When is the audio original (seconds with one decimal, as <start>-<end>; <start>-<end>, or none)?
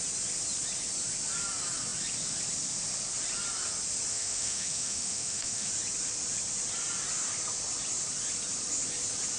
0.0-4.1; 5.7-9.4